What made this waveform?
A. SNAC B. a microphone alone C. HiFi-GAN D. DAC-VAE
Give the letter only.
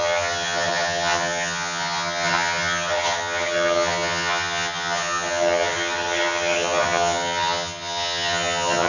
C